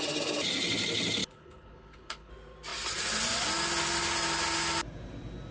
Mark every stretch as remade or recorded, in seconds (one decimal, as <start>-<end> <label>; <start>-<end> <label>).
0.0-1.2 recorded; 1.2-2.3 remade; 2.3-5.5 recorded